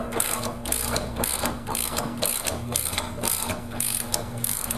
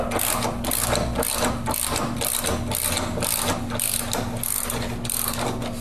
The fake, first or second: first